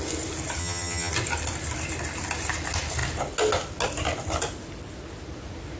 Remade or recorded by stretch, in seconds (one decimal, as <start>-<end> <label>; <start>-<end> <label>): 0.0-0.6 recorded; 0.6-1.1 remade; 1.1-5.8 recorded